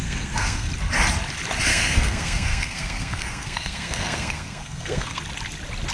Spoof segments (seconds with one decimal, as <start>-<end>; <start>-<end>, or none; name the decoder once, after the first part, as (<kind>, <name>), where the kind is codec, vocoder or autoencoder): 0.0-0.7 (codec, SNAC); 1.7-5.2